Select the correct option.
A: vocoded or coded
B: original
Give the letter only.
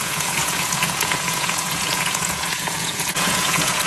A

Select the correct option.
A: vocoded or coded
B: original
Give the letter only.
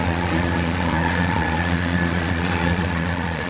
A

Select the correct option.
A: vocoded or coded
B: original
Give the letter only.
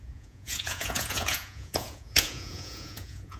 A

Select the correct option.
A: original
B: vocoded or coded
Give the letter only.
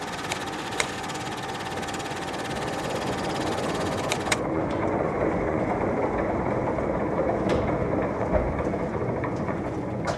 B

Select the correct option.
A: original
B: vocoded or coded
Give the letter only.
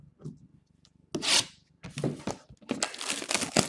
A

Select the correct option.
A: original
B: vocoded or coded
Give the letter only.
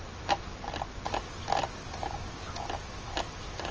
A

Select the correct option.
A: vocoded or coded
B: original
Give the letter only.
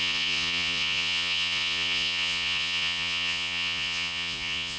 A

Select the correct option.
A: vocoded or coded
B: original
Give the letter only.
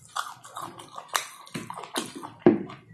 B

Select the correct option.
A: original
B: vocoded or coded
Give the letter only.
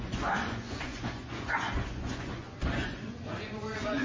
B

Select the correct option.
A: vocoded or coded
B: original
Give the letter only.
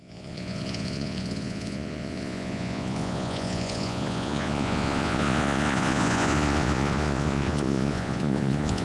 A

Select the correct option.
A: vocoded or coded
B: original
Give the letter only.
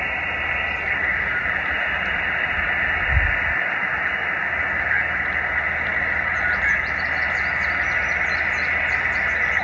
B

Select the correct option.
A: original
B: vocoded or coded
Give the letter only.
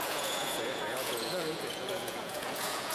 B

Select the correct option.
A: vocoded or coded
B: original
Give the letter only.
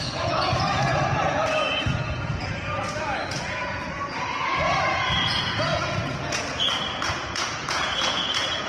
A